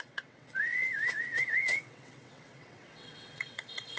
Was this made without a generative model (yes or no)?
no